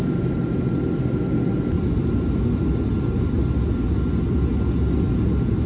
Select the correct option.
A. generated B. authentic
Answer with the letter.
B